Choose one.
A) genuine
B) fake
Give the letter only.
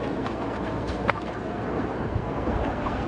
B